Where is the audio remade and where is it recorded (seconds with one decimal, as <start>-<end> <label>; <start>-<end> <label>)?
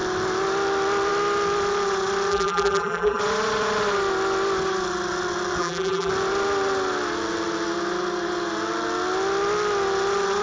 0.0-2.3 recorded; 2.3-3.2 remade; 3.2-5.6 recorded; 5.6-6.1 remade; 6.1-10.4 recorded